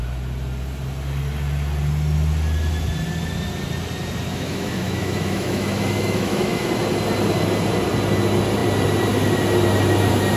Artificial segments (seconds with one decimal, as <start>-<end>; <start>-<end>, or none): 4.3-6.7